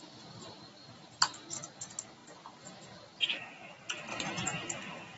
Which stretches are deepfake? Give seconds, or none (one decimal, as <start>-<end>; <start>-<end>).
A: none